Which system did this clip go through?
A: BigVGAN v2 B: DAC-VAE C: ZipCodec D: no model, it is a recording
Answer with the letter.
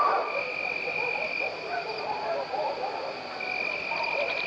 D